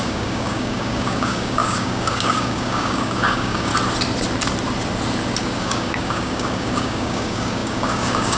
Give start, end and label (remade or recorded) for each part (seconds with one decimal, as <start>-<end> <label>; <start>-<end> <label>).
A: 0.0-3.7 remade; 3.7-5.4 recorded; 5.4-8.4 remade